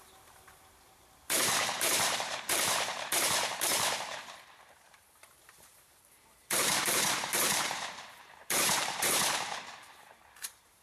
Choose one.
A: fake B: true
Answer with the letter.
A